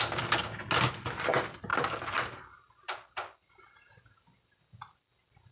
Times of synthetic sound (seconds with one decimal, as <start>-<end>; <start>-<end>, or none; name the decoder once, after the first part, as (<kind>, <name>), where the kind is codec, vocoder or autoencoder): none